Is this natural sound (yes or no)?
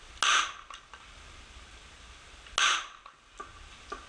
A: yes